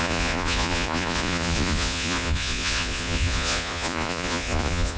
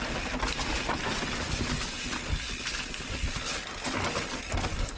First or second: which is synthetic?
first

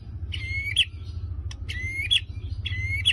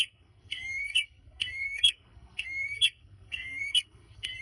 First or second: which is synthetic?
second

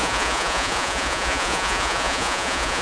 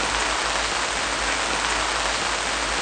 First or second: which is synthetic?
first